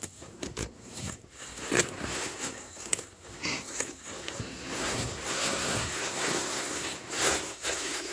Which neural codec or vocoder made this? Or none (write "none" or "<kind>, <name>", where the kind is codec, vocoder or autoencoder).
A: codec, SNAC